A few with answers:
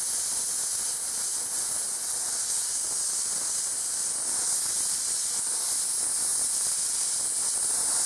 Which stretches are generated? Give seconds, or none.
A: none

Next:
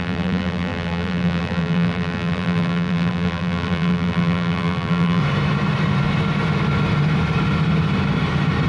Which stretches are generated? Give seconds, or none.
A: 0.0-5.2 (vocoder, BigVGAN v2)

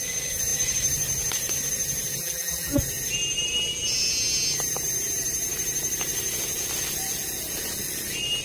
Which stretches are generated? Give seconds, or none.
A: 2.2-2.7 (vocoder, BigVGAN v2)